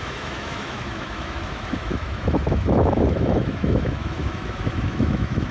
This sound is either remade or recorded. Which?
remade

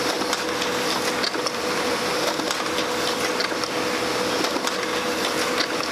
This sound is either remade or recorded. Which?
recorded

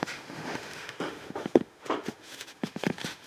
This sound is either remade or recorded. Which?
remade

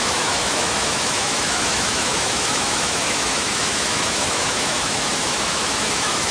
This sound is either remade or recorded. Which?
remade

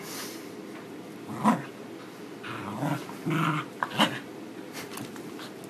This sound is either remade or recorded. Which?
recorded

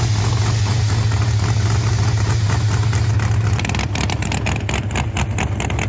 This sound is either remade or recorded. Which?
recorded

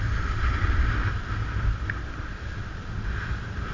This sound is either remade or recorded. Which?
recorded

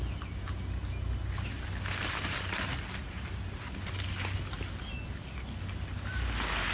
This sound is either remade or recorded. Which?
recorded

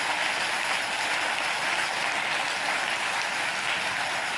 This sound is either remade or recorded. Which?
recorded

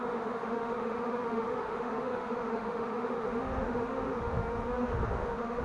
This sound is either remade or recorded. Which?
remade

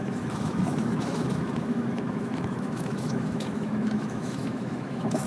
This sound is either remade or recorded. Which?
remade